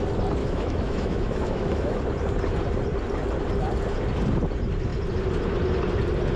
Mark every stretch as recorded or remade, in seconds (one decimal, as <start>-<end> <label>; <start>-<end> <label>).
0.0-0.4 recorded; 0.4-2.0 remade; 2.0-6.4 recorded